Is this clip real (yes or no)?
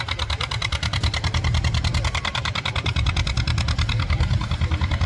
no